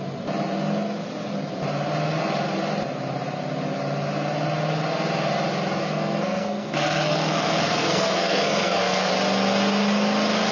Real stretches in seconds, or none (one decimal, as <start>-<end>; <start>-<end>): 0.0-5.8; 9.1-10.5